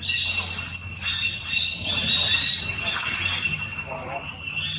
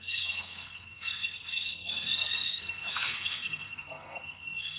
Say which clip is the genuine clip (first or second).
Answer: first